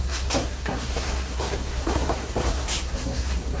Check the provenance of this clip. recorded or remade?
remade